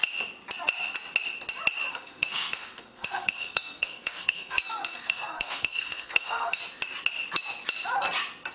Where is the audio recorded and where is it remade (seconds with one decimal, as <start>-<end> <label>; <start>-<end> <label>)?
0.0-1.9 recorded; 1.9-6.6 remade; 6.6-8.5 recorded